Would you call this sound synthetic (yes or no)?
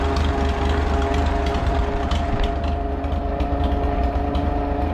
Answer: no